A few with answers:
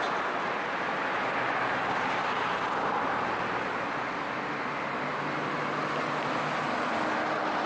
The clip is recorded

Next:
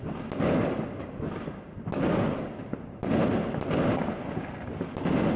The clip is recorded